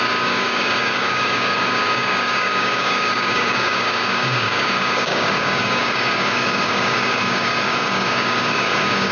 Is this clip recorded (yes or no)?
no